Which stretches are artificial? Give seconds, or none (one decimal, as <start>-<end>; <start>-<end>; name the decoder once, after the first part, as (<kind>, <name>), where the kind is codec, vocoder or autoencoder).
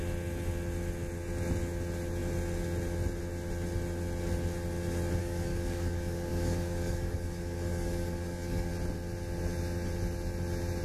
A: 5.2-8.7 (codec, DAC)